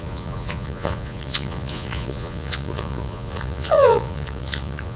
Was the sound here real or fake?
fake